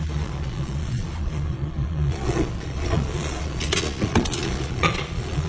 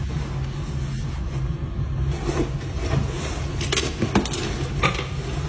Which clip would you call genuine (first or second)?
second